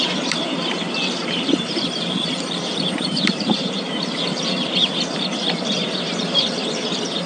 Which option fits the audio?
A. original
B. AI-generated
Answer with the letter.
B